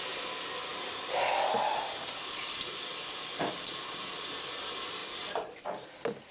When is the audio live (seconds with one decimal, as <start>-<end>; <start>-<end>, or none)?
0.7-3.2